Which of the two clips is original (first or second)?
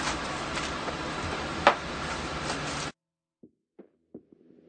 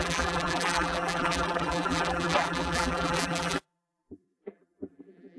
first